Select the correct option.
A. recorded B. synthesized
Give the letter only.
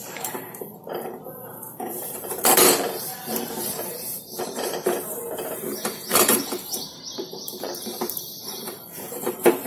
B